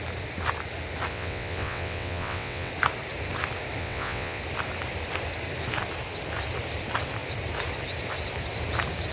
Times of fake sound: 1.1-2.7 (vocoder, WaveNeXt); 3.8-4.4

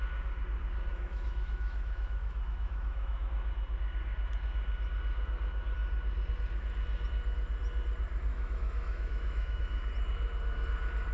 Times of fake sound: 0.9-3.3 (autoencoder, DAC-VAE); 8.3-9.6

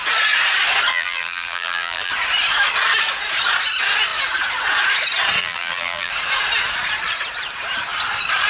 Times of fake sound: 0.9-2.1 (vocoder, BigVGAN v2); 5.4-6.1

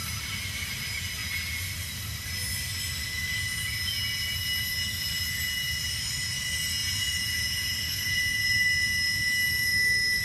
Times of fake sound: 6.8-8.2 (vocoder, Vocos)

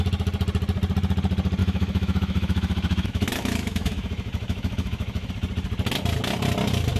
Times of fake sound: 1.6-5.3 (autoencoder, DAC-VAE)

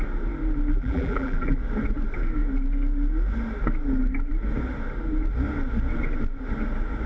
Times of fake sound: 0.7-1.6 (vocoder, BigVGAN v2)

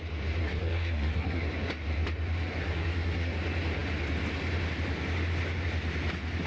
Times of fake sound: 0.4-1.4 (codec, SNAC); 2.6-3.3

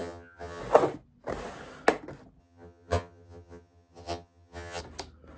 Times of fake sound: 0.0-0.6 (vocoder, HiFi-GAN); 2.4-4.8